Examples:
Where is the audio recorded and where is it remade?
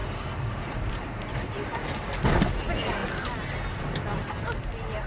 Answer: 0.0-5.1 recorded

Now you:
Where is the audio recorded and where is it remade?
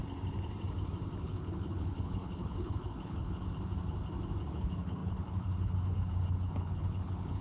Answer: 0.0-1.2 recorded; 1.2-3.5 remade; 3.5-4.5 recorded; 4.5-7.4 remade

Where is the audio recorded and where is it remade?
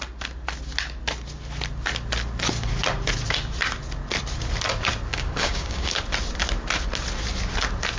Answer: 0.0-5.1 recorded; 5.1-6.0 remade; 6.0-8.0 recorded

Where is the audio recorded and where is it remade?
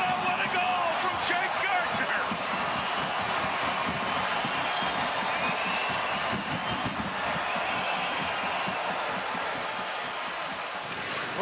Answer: 0.0-11.4 recorded